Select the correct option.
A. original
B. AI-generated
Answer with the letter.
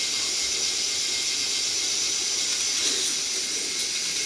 A